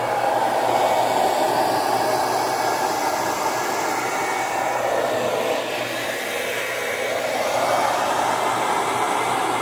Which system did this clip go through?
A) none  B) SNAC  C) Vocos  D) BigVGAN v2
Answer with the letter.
A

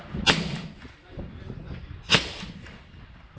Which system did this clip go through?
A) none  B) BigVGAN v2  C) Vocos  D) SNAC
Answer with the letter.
A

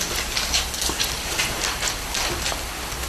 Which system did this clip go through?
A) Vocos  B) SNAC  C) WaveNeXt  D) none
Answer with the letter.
D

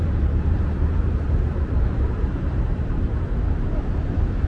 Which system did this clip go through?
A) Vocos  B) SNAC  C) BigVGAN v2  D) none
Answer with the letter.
C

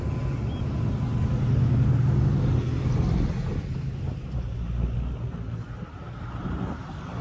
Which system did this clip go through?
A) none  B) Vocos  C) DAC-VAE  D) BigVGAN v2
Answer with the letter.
A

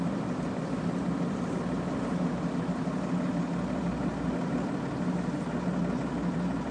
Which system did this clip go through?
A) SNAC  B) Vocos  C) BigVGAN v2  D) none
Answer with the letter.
D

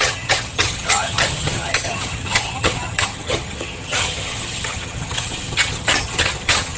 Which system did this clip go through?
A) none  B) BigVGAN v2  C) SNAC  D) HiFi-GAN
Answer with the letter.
D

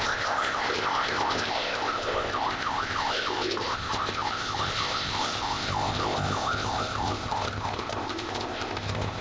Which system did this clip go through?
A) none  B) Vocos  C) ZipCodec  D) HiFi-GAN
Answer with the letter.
C